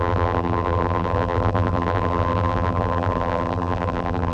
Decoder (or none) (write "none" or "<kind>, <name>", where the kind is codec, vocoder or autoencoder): vocoder, BigVGAN v2